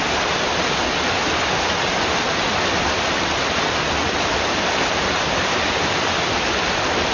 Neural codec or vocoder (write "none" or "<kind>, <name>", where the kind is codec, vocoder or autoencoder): none